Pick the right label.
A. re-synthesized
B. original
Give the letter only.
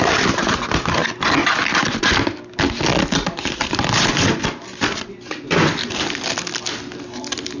B